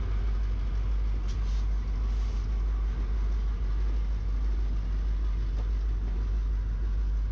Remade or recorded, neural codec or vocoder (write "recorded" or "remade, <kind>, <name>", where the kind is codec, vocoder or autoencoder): recorded